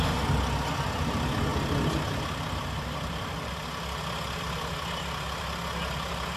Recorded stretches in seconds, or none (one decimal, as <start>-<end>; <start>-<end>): 0.0-6.4